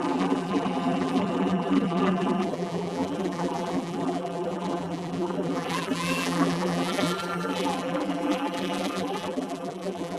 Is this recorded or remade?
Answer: remade